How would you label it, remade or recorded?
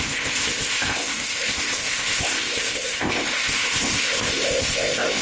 remade